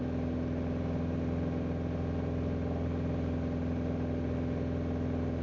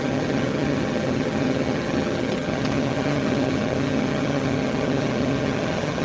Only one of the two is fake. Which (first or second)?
second